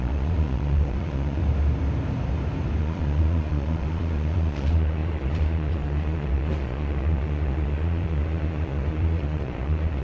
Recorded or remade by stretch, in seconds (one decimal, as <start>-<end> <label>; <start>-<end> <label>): 0.0-1.4 remade; 1.4-2.8 recorded; 2.8-10.0 remade